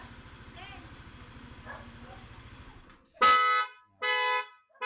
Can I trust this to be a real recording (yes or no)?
yes